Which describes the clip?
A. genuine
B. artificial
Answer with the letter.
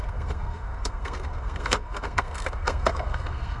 B